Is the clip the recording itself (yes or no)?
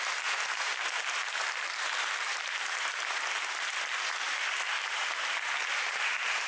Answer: no